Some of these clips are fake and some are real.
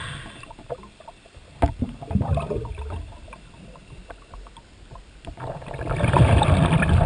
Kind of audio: fake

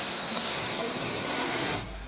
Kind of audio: fake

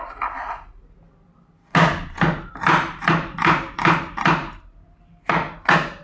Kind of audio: real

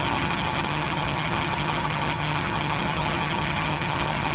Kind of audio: fake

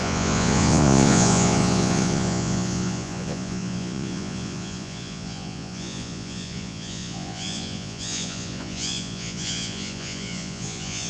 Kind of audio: fake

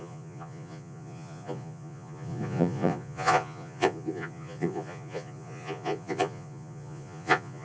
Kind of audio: fake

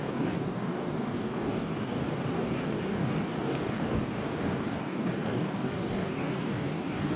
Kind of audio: fake